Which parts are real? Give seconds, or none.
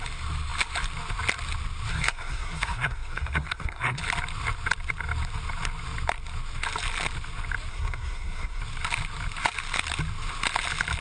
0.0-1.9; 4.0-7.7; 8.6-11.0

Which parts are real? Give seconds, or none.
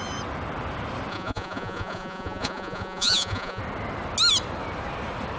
0.0-1.1; 3.6-5.4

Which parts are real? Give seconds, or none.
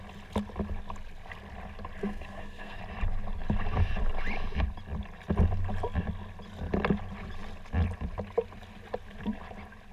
0.0-2.0; 2.8-9.9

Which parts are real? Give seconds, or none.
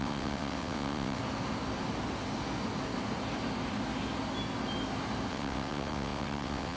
1.2-5.3